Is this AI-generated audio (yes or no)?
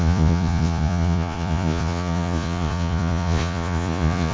yes